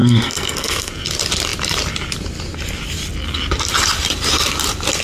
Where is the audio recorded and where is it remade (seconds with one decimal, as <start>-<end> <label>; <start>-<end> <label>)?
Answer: 0.0-0.9 remade; 0.9-5.0 recorded